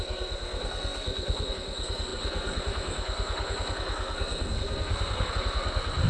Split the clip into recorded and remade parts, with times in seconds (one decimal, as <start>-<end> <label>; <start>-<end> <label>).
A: 0.0-6.1 remade